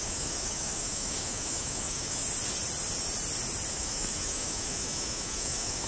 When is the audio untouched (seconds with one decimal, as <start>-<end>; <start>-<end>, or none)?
2.2-3.7